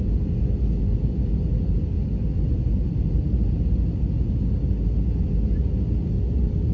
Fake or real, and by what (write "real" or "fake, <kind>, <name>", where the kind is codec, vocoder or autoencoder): real